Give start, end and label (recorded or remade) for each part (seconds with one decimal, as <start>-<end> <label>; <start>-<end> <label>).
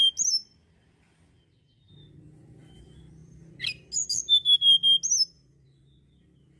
0.0-6.6 recorded